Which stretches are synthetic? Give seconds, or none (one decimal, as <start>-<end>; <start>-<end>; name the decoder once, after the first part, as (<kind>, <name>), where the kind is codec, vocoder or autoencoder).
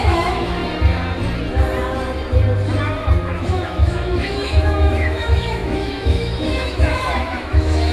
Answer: 0.0-0.6 (autoencoder, DAC-VAE); 3.2-7.9